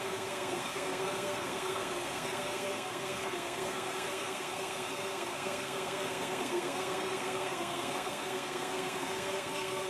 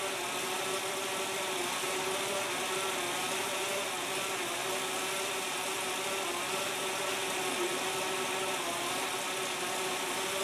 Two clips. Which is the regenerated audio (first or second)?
first